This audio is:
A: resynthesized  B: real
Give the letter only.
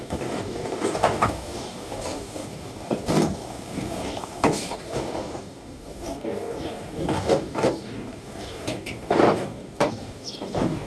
A